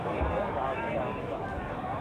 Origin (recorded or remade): remade